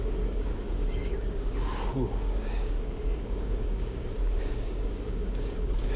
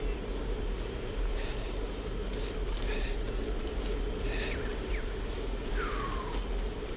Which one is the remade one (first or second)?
first